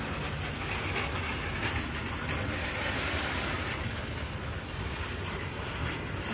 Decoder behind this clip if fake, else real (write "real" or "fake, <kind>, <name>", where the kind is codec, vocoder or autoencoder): real